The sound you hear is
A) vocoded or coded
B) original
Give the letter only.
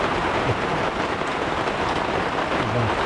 B